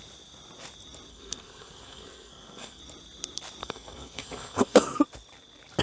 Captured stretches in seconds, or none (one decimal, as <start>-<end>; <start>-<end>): 0.0-1.1; 2.8-3.6; 5.0-5.8

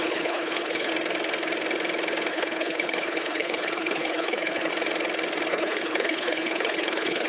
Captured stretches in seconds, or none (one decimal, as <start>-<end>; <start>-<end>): 0.9-2.3; 4.7-5.5

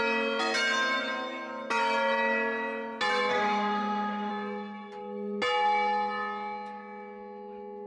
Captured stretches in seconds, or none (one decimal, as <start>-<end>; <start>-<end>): 0.0-3.3; 4.3-7.9

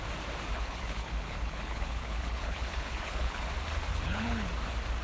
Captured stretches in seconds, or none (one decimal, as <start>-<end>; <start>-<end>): 0.0-0.5; 3.5-3.9; 4.5-5.0

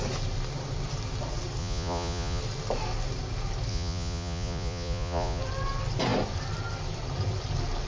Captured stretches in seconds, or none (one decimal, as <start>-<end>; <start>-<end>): 0.0-1.6; 2.4-3.7; 5.4-7.9